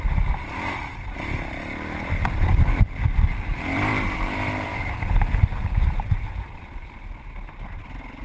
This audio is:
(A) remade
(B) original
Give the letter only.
A